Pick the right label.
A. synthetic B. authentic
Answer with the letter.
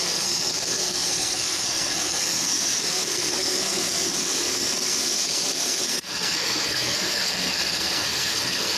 A